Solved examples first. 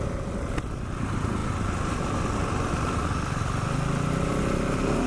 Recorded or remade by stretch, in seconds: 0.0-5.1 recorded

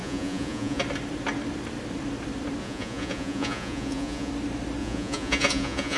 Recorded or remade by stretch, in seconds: 0.0-0.8 remade; 0.8-2.6 recorded; 2.6-4.3 remade; 4.3-4.8 recorded; 4.8-6.0 remade

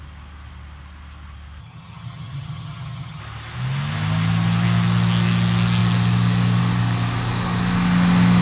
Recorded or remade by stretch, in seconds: 0.0-1.6 recorded; 1.6-3.2 remade; 3.2-8.4 recorded

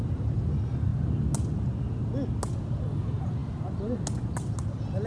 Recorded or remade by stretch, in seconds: 0.0-5.1 recorded

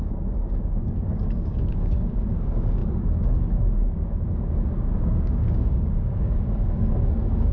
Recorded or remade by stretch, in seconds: 0.0-7.5 remade